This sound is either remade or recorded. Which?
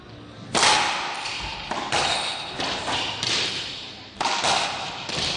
recorded